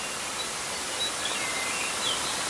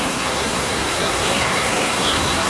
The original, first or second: first